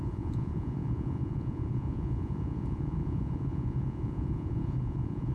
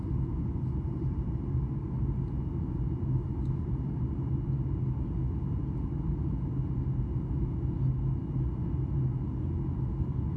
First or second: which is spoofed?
first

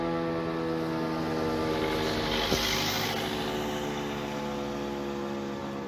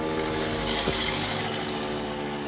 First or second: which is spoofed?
second